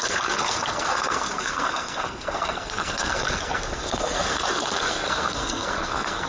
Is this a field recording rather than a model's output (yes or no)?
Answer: no